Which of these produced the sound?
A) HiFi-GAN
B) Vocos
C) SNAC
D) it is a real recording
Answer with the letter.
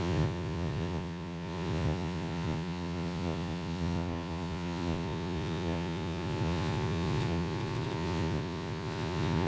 B